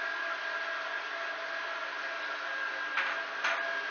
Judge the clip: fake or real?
real